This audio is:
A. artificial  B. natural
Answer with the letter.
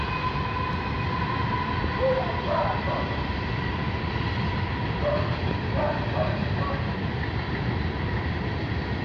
B